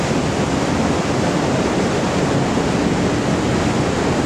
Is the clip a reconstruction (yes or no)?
no